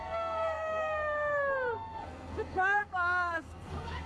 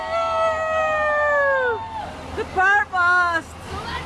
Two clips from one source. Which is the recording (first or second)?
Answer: second